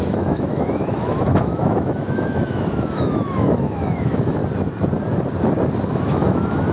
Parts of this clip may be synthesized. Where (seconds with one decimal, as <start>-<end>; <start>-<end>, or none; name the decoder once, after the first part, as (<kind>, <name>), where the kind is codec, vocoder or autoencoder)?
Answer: 0.0-4.4 (autoencoder, DAC-VAE); 5.9-6.7